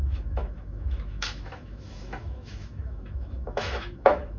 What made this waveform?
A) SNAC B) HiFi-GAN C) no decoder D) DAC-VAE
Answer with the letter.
D